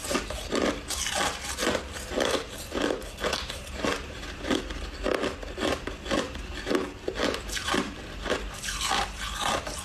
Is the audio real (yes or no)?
yes